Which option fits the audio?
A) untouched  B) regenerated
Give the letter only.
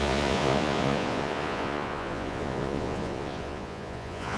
B